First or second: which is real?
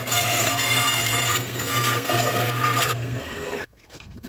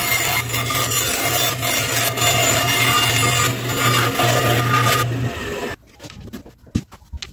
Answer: second